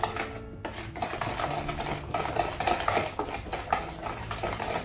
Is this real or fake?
real